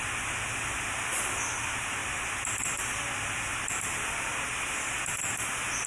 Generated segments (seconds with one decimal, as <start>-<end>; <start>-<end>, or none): none